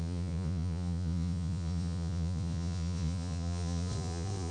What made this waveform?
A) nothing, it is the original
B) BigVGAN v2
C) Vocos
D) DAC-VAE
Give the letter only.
C